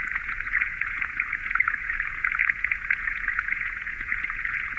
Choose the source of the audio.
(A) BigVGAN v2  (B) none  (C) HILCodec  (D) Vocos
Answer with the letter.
D